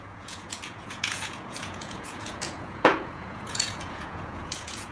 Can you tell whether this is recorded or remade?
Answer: remade